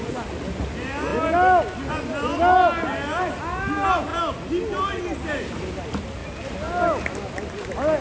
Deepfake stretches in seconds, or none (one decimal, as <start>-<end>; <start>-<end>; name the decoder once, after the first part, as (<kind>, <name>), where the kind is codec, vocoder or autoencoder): none